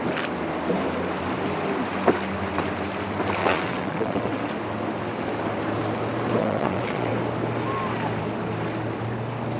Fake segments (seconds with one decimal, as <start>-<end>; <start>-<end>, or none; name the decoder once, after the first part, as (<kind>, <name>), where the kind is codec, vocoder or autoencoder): 3.4-4.4 (vocoder, WaveNeXt); 6.4-7.1